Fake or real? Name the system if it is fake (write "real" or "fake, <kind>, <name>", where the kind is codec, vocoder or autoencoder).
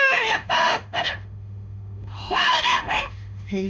fake, autoencoder, DAC-VAE